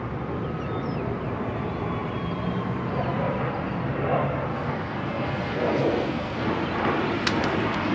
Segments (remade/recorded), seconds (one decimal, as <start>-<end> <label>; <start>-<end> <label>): 0.0-4.5 recorded; 4.5-6.5 remade; 6.5-7.9 recorded